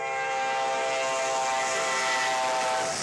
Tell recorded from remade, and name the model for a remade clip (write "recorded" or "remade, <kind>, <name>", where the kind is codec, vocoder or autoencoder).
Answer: recorded